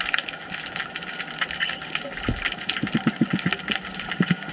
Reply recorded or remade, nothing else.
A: recorded